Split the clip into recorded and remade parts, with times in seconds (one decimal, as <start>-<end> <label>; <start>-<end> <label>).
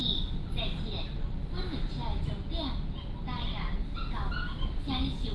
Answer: 0.0-5.3 recorded